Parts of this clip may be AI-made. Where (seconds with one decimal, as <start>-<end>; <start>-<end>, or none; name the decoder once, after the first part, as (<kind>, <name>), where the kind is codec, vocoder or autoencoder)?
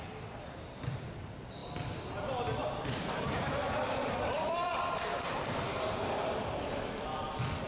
0.0-7.7 (vocoder, BigVGAN v2)